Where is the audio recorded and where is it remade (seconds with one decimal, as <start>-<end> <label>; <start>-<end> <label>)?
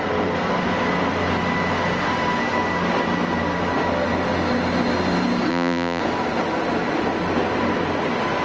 0.0-5.5 recorded; 5.5-6.0 remade; 6.0-8.4 recorded